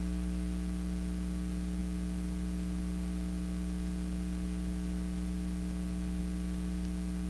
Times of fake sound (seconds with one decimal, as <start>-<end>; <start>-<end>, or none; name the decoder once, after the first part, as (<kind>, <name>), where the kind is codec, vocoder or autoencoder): none